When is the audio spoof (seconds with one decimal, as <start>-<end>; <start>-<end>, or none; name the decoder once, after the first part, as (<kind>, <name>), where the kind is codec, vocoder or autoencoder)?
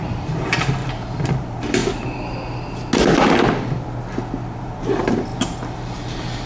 0.0-0.8 (vocoder, BigVGAN v2); 1.3-1.8; 4.6-6.5